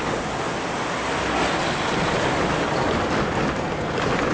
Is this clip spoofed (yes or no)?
no